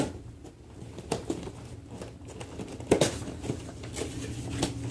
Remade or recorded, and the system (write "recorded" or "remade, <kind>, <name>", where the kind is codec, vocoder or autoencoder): recorded